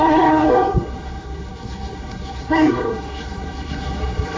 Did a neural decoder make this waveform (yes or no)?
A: yes